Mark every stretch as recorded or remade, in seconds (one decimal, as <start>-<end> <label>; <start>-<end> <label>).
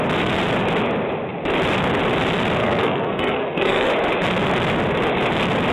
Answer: 0.0-2.6 recorded; 2.6-3.9 remade; 3.9-5.7 recorded